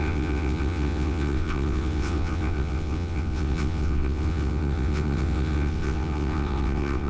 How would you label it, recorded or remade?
remade